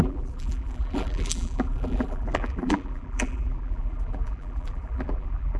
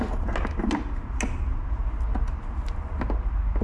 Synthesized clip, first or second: first